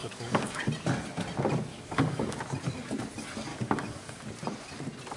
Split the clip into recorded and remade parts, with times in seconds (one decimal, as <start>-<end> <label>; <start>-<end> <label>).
0.0-0.6 remade; 0.6-1.7 recorded; 1.7-2.4 remade; 2.4-3.5 recorded; 3.5-4.3 remade; 4.3-5.2 recorded